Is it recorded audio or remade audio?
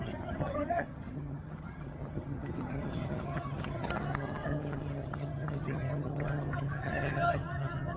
remade